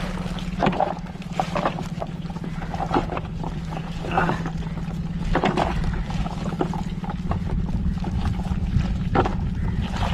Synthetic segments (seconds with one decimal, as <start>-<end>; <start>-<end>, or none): 0.6-4.5